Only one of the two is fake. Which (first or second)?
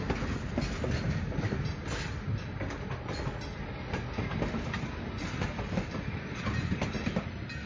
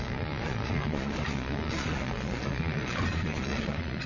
second